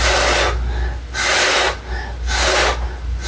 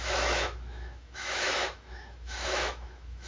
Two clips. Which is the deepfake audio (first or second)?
second